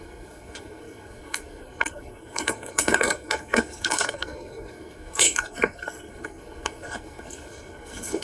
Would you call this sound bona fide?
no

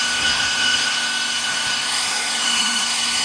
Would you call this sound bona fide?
no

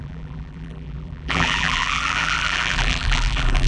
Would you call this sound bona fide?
no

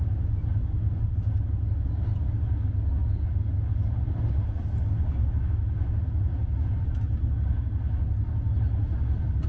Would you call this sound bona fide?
yes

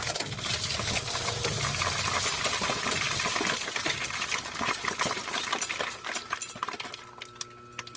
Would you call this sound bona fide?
yes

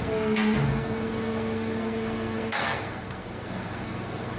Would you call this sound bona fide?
no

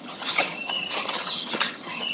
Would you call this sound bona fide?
no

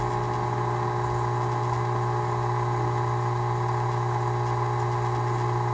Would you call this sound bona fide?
yes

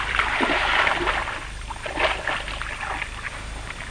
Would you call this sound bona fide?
no